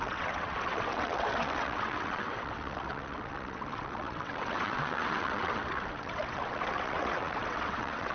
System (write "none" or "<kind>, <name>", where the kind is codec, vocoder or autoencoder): vocoder, WaveNeXt